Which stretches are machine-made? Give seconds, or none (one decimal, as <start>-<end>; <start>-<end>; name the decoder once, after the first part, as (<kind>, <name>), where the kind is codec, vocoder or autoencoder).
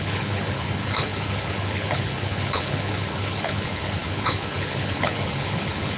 0.0-6.0 (codec, HILCodec)